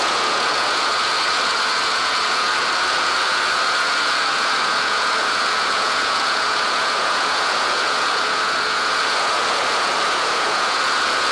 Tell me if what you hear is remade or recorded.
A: remade